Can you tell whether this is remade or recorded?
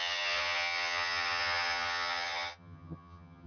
remade